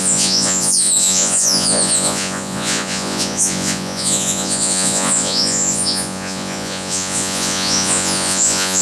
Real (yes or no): no